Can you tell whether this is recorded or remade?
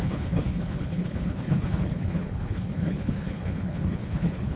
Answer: remade